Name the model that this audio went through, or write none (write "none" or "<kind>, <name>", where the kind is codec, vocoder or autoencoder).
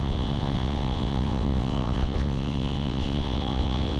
vocoder, WaveNeXt